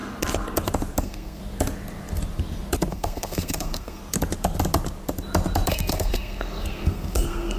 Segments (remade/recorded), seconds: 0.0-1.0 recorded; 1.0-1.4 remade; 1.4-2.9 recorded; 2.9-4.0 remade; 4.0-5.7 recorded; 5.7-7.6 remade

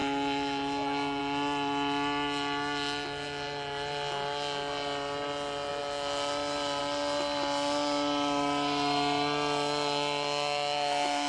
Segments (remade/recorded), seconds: 0.0-11.3 recorded

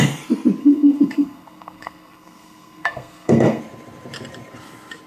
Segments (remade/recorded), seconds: 0.0-0.6 recorded; 0.6-3.6 remade; 3.6-5.1 recorded

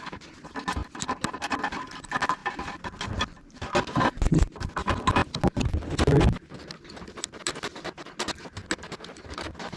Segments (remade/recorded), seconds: 0.0-9.8 recorded